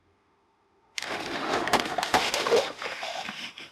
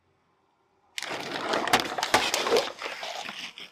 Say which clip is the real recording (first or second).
second